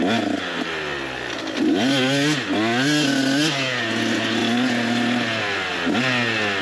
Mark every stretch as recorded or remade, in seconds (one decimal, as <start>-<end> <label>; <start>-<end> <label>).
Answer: 0.0-6.6 recorded